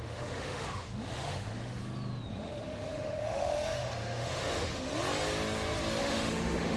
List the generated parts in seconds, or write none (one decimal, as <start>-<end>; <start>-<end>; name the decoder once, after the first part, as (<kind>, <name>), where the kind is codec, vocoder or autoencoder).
0.0-1.8 (autoencoder, DAC-VAE); 2.3-4.9; 6.0-6.8